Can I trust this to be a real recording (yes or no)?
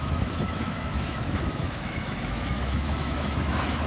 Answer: no